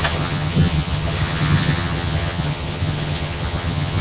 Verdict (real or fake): fake